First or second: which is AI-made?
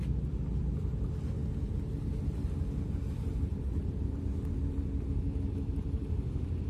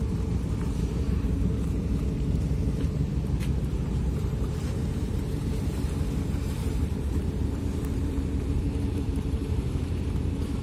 second